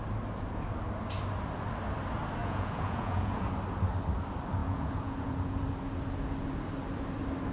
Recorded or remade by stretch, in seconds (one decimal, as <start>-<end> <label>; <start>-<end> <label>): 0.0-2.4 recorded; 2.4-3.5 remade; 3.5-4.6 recorded; 4.6-5.6 remade; 5.6-7.5 recorded